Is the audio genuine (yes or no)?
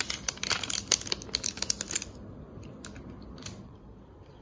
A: yes